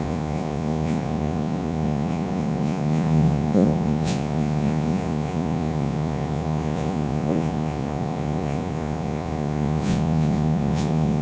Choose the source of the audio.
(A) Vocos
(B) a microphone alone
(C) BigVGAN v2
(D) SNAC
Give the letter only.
A